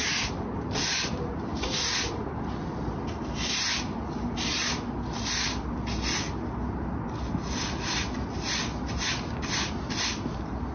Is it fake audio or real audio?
real